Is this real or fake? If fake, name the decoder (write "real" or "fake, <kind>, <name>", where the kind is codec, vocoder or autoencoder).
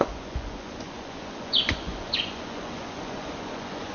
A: fake, vocoder, Vocos